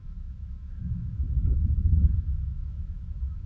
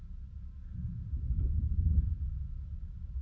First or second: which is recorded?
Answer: second